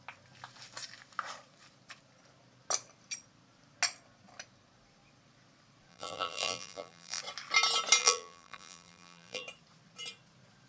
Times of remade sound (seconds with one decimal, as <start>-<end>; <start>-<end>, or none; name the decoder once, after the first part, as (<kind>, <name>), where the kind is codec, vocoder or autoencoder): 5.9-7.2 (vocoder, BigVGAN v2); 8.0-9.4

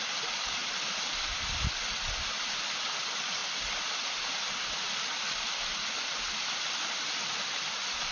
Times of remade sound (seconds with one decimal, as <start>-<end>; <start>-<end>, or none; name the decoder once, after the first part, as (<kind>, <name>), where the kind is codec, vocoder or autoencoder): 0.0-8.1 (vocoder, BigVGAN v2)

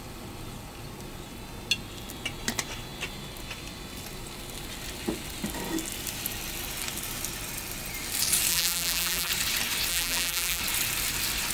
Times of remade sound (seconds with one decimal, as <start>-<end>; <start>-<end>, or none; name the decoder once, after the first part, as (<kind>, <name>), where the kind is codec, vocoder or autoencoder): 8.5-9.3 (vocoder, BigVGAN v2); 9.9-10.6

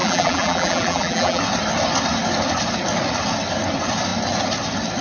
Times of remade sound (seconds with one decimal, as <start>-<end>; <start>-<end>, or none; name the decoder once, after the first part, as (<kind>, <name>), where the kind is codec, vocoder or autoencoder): 0.0-1.4 (vocoder, BigVGAN v2)